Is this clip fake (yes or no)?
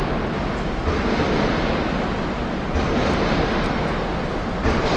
no